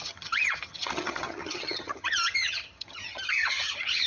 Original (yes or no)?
no